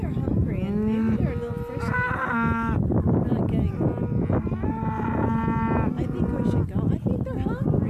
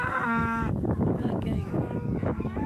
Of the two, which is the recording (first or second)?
first